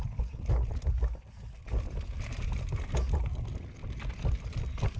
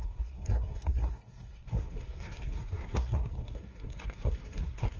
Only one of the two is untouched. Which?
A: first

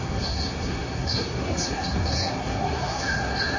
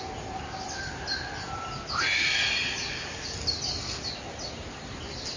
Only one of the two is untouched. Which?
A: second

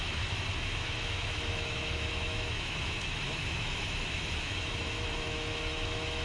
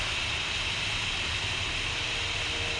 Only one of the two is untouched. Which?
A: second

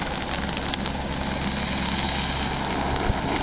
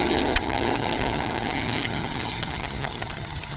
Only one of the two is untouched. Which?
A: first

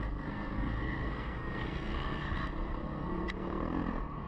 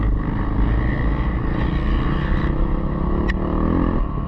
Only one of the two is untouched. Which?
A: second